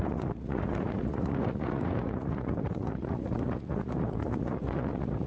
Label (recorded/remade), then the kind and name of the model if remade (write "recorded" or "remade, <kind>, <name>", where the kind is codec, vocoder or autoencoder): remade, vocoder, Vocos